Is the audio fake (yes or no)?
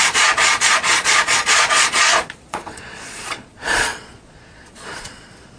yes